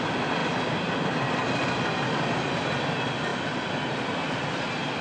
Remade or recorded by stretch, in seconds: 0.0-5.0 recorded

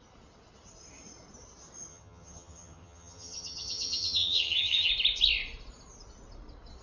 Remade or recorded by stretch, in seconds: 0.0-1.9 recorded; 1.9-4.9 remade; 4.9-6.8 recorded

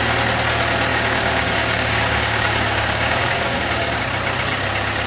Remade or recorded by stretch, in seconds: 0.0-0.9 recorded; 0.9-4.0 remade; 4.0-5.1 recorded

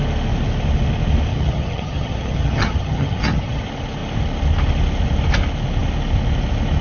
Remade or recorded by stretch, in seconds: 0.0-1.3 recorded; 1.3-3.6 remade; 3.6-6.8 recorded

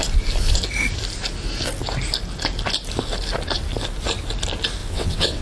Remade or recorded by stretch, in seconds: 0.0-4.8 recorded; 4.8-5.4 remade

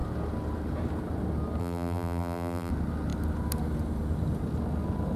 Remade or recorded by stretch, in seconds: 0.0-1.6 recorded; 1.6-2.7 remade; 2.7-5.2 recorded

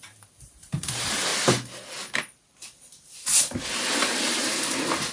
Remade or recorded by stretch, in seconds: 0.0-1.3 remade; 1.3-4.4 recorded; 4.4-5.1 remade

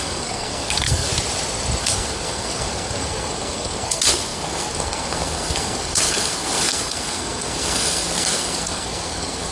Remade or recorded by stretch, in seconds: 0.0-1.1 remade; 1.1-1.8 recorded; 1.8-9.5 remade